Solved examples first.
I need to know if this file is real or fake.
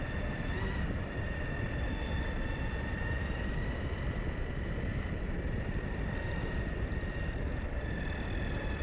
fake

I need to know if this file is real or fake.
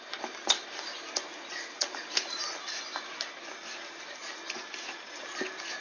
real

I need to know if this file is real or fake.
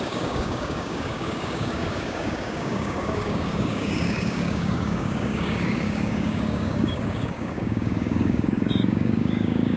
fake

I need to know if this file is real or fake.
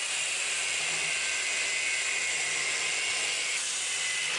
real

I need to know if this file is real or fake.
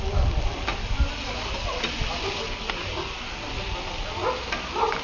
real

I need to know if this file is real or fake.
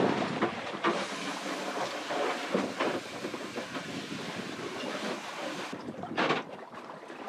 fake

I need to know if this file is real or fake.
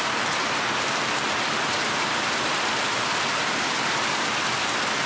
fake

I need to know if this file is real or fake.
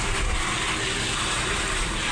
real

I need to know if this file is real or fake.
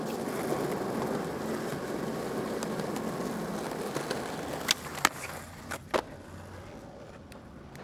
real